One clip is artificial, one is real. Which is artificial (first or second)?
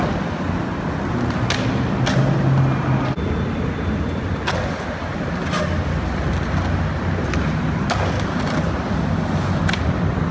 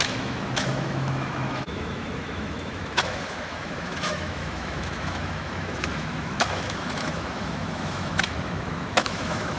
second